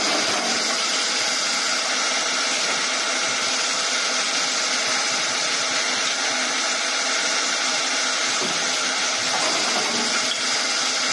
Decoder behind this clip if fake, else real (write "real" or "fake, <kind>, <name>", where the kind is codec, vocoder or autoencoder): real